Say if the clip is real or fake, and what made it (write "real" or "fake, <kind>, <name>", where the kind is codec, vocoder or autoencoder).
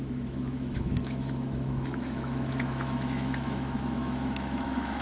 fake, autoencoder, DAC-VAE